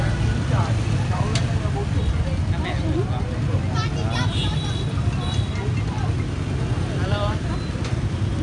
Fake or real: real